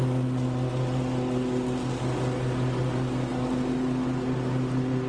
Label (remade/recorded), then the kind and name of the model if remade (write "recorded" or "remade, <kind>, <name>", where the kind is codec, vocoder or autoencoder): recorded